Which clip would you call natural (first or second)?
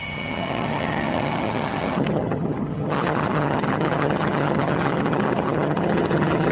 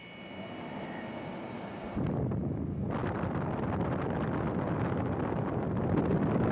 second